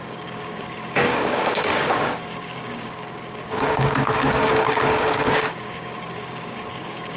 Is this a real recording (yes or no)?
no